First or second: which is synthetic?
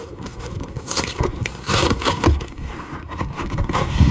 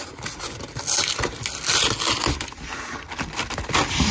first